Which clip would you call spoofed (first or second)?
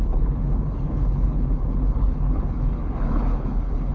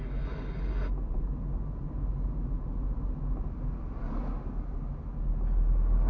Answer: first